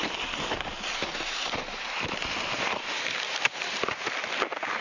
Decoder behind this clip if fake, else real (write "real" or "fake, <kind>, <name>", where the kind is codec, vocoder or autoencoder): real